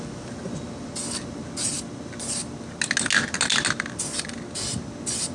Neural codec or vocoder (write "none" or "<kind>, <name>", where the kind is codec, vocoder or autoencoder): none